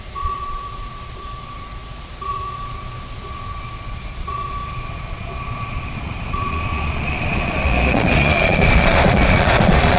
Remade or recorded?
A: remade